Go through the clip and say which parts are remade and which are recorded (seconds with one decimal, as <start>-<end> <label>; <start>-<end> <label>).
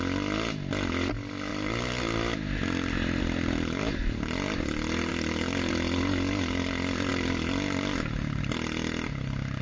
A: 0.0-9.6 recorded